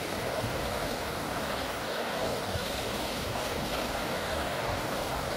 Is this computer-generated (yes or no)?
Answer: yes